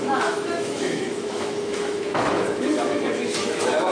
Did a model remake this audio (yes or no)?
yes